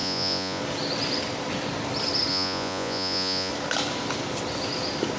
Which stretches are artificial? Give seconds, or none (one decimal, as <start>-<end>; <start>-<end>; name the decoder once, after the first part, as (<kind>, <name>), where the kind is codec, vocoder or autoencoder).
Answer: 0.0-0.6 (vocoder, Vocos); 2.3-3.5